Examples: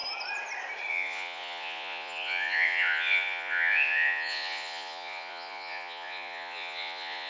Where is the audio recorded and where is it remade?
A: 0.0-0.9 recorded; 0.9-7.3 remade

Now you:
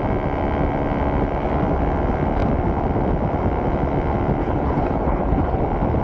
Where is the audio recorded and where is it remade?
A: 0.0-4.4 recorded; 4.4-5.6 remade; 5.6-6.0 recorded

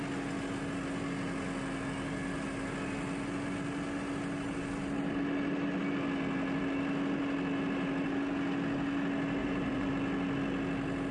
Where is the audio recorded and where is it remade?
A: 0.0-9.4 recorded; 9.4-9.9 remade; 9.9-11.1 recorded